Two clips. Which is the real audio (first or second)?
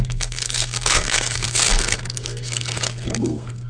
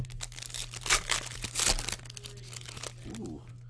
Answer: second